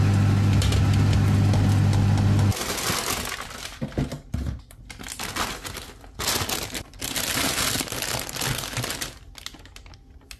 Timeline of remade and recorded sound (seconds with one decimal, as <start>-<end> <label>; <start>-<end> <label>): 0.0-10.4 recorded